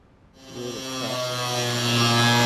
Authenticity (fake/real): real